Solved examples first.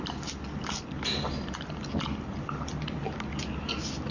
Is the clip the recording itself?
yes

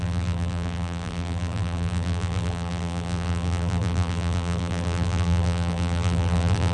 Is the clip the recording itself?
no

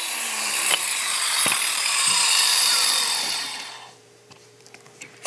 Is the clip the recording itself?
no